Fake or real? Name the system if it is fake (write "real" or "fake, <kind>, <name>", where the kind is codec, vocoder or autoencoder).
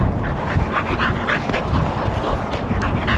real